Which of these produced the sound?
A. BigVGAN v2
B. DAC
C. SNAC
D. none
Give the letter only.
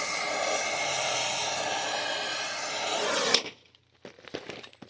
D